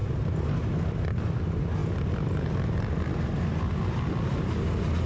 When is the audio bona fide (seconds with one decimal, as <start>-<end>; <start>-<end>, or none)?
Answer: 0.0-5.1